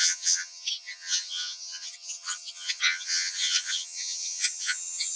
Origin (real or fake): fake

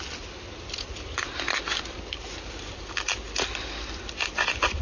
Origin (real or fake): real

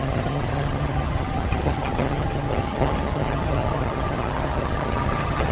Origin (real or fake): fake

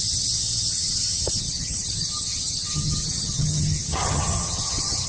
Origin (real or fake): fake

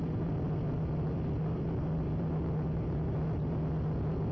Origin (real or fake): real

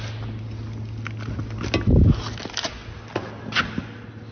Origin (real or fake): real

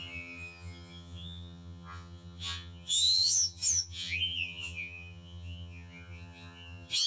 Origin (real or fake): fake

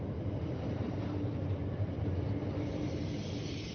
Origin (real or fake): real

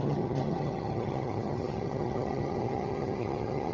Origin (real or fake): fake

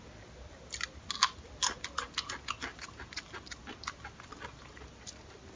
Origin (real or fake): real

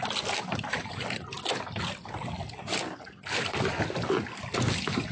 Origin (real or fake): real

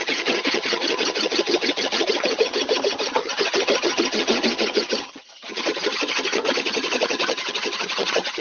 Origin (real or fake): fake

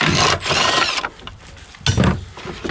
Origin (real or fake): real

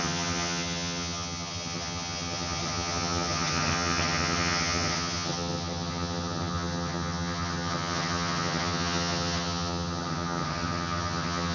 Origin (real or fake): fake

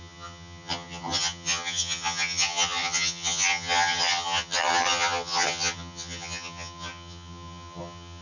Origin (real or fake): fake